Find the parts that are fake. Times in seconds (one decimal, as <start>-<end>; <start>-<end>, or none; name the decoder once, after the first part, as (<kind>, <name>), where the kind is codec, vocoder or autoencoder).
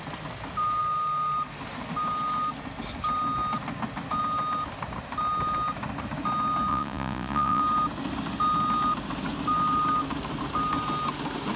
6.7-7.6 (vocoder, Vocos)